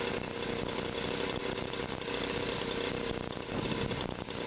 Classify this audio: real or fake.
real